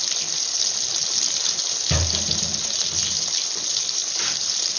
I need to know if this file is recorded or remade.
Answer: recorded